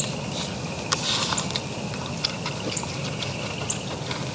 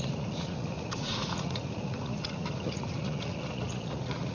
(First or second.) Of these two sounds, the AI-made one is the second